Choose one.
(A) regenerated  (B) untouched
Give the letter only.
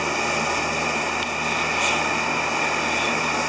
B